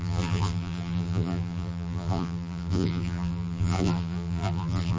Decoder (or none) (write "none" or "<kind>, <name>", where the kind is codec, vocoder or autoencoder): vocoder, BigVGAN v2